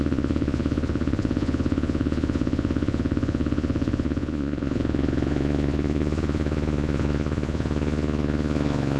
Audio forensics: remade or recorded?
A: remade